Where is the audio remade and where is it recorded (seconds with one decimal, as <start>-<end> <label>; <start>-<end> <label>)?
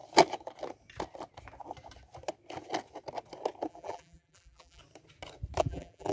0.0-3.7 recorded; 3.7-4.8 remade; 4.8-5.6 recorded; 5.6-6.1 remade